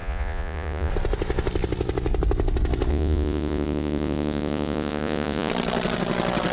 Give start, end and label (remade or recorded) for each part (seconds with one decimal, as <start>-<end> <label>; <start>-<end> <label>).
0.0-0.9 remade; 0.9-2.9 recorded; 2.9-5.5 remade; 5.5-6.5 recorded